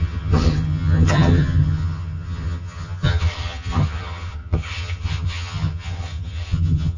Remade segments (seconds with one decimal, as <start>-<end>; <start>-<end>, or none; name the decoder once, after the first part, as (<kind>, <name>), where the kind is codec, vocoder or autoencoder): 0.0-7.0 (vocoder, HiFi-GAN)